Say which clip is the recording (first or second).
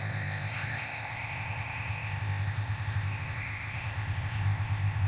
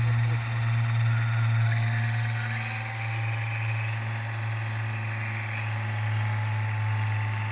second